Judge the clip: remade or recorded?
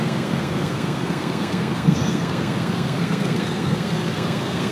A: remade